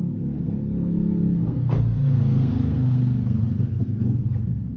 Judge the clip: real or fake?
fake